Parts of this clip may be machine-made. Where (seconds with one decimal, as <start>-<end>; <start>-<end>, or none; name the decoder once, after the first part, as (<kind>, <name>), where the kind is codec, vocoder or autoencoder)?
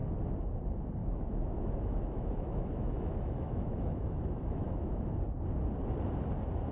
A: 1.0-5.0 (autoencoder, DAC-VAE)